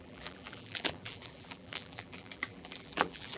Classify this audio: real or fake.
fake